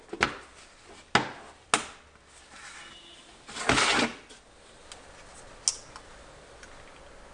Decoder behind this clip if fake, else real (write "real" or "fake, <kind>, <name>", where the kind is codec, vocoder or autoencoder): real